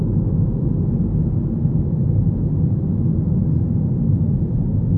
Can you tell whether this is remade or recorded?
recorded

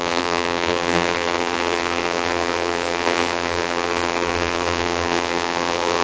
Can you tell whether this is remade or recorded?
remade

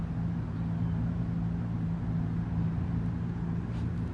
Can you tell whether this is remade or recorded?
recorded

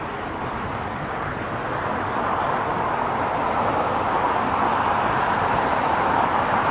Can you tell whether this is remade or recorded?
recorded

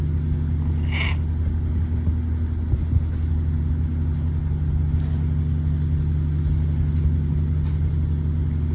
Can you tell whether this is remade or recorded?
recorded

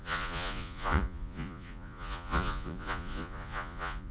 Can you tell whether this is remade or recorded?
remade